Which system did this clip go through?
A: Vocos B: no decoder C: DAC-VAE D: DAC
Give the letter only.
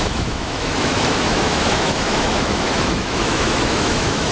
C